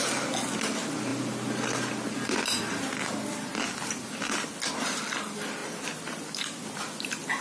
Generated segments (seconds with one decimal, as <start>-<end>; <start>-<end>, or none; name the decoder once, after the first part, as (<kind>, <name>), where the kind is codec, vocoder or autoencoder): 5.6-6.2 (vocoder, BigVGAN v2)